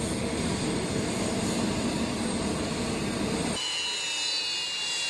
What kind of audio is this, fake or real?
real